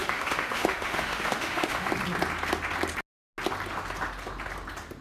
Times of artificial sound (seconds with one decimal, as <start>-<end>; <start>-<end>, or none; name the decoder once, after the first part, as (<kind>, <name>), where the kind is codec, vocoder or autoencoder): 0.0-1.9 (autoencoder, DAC-VAE)